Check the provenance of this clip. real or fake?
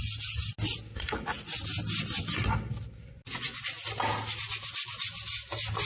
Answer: real